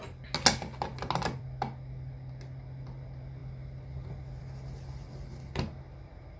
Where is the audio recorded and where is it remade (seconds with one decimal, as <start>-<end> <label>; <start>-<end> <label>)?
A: 0.0-6.4 recorded